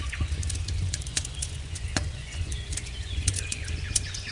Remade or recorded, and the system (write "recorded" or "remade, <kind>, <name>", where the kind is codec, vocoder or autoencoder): remade, vocoder, Vocos